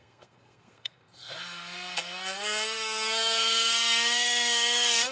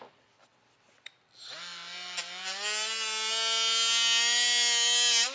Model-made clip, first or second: first